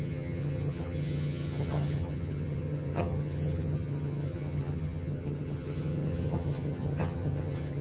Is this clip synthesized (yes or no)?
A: yes